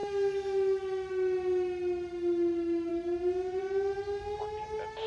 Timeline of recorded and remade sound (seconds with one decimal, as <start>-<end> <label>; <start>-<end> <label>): 0.0-1.1 remade; 1.1-5.1 recorded